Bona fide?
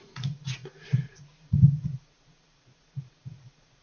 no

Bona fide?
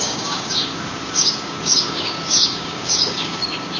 no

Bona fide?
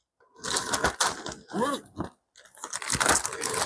yes